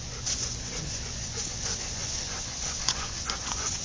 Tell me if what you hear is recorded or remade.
remade